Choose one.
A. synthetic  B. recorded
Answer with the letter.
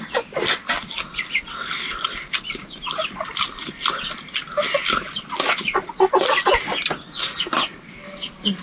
B